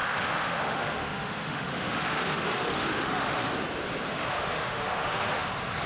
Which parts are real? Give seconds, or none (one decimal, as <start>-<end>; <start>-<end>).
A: 3.5-4.1; 5.5-5.9